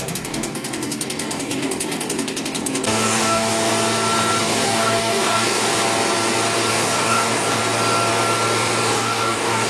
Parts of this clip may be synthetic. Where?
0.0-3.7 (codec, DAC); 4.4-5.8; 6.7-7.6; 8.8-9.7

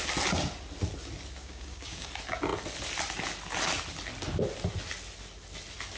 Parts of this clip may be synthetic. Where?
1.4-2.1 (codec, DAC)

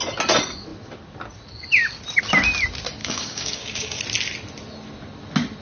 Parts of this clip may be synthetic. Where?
3.0-4.0 (codec, DAC)

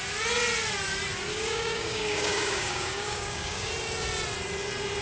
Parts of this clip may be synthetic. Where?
1.3-3.7 (codec, DAC)

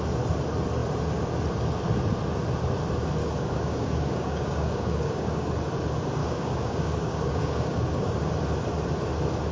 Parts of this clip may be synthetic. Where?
3.2-5.5 (codec, DAC); 6.2-8.3

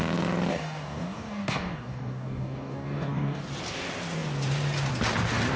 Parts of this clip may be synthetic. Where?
0.5-3.4 (codec, DAC)

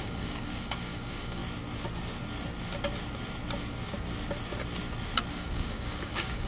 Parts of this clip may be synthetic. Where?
0.0-1.4 (codec, DAC); 5.3-6.5

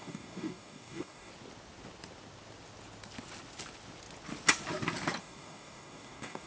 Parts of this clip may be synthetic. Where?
0.0-1.3 (codec, DAC); 5.2-6.5